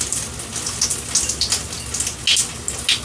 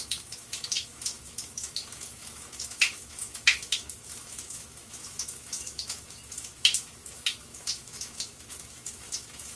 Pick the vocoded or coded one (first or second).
second